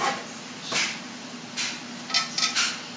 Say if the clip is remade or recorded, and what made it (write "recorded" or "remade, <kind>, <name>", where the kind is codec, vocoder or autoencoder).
recorded